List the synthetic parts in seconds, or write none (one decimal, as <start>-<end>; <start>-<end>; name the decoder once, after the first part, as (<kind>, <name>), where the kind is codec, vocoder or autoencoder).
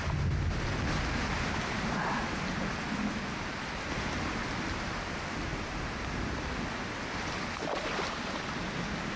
none